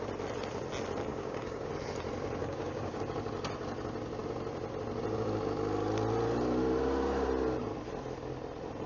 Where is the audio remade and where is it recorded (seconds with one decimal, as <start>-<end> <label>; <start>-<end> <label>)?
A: 0.0-1.1 recorded; 1.1-1.7 remade; 1.7-2.4 recorded; 2.4-3.0 remade; 3.0-8.9 recorded